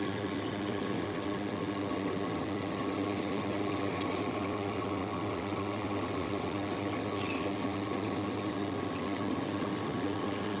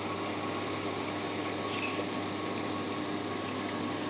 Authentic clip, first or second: second